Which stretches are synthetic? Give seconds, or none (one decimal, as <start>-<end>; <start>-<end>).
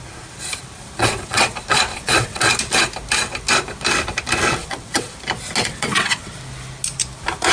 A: 1.0-1.5; 1.9-2.4; 4.6-5.1; 5.6-6.3